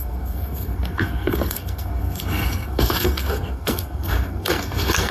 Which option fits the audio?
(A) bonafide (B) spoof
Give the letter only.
B